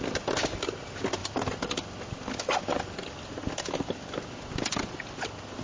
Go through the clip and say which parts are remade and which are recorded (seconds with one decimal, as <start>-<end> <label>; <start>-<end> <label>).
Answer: 0.0-5.6 recorded